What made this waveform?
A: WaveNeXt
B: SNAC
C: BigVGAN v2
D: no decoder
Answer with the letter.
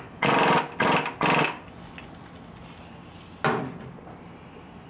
D